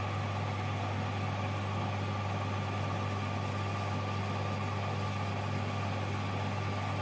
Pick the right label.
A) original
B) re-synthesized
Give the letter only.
A